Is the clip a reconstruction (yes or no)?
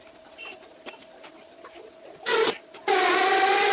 no